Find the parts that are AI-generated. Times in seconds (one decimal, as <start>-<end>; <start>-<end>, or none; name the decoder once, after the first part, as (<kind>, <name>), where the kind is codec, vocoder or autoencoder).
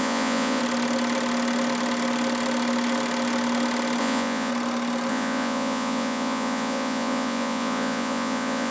0.0-0.6 (vocoder, Vocos); 4.0-4.5; 5.1-8.7